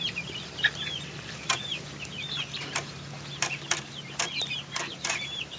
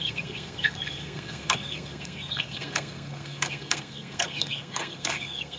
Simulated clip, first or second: second